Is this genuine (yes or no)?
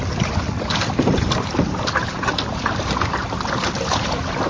yes